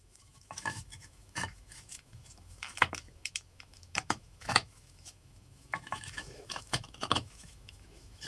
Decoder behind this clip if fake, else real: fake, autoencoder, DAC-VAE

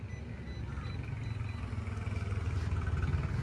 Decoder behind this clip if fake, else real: real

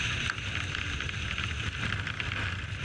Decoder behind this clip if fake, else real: real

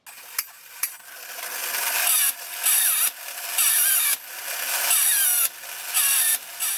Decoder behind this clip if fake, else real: real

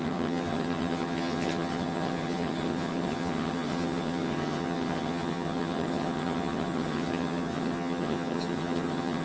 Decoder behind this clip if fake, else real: fake, vocoder, HiFi-GAN